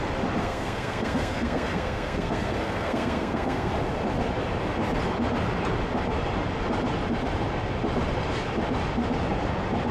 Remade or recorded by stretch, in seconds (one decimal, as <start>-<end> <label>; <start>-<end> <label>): 0.0-0.4 recorded; 0.4-3.7 remade; 3.7-9.9 recorded